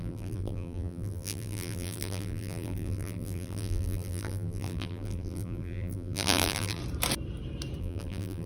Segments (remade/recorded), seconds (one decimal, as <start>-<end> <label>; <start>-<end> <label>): 0.0-6.8 remade; 6.8-7.8 recorded; 7.8-8.5 remade